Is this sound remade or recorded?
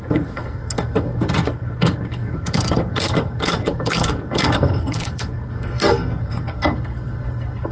remade